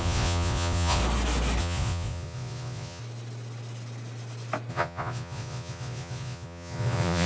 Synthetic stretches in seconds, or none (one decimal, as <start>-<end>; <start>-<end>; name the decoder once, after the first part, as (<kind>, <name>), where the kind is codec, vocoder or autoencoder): 0.0-1.0 (vocoder, Vocos); 1.6-3.0; 4.7-7.3